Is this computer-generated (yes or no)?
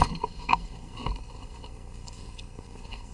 yes